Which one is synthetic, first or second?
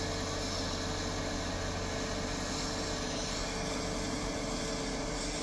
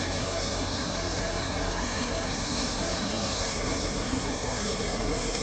second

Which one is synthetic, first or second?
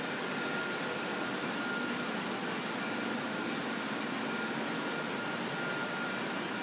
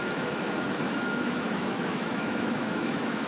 second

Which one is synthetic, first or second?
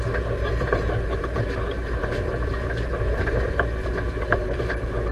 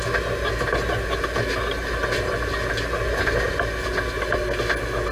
first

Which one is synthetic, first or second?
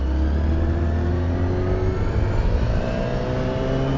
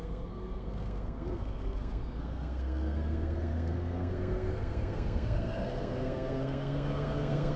second